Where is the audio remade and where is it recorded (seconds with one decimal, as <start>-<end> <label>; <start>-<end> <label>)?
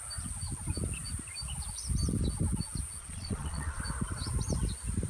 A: 0.0-3.0 recorded; 3.0-3.8 remade; 3.8-5.1 recorded